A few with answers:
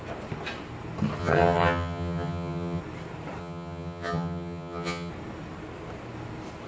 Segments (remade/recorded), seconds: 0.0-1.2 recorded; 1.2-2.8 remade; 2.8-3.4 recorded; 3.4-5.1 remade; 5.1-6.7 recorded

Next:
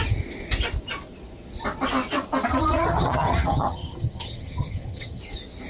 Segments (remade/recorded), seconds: 0.0-2.5 recorded; 2.5-5.2 remade; 5.2-5.7 recorded

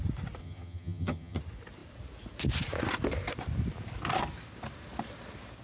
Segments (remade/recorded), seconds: 0.0-0.4 recorded; 0.4-1.4 remade; 1.4-5.6 recorded

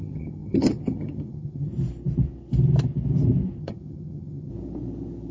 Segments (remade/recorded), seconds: 0.0-1.7 remade; 1.7-3.6 recorded; 3.6-4.5 remade; 4.5-5.3 recorded

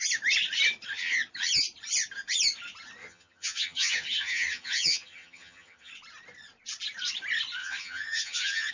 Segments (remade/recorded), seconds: 0.0-3.0 recorded; 3.0-5.9 remade; 5.9-7.6 recorded; 7.6-8.7 remade